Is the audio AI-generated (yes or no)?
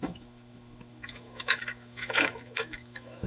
yes